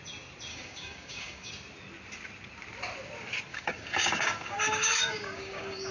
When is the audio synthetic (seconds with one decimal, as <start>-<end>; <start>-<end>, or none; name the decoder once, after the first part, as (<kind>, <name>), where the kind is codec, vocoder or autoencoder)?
0.5-1.5 (codec, DAC); 3.5-5.9